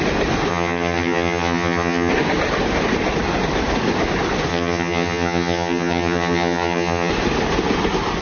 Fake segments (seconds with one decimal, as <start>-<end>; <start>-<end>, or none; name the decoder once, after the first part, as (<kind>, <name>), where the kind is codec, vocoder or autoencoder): 0.5-2.1 (vocoder, HiFi-GAN); 4.5-7.1